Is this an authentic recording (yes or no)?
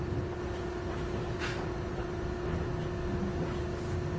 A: yes